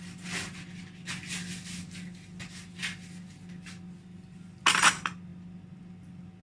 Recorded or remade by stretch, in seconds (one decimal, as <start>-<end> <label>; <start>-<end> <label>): 0.0-6.4 recorded